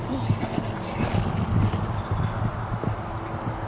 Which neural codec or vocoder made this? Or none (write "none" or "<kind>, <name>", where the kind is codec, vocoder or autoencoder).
none